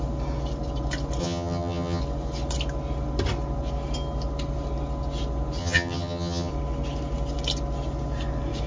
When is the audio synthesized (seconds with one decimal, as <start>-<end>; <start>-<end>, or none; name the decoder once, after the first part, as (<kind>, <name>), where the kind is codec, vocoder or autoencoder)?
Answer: 1.2-2.0 (vocoder, HiFi-GAN); 5.6-6.5